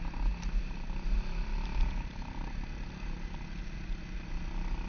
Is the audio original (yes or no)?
yes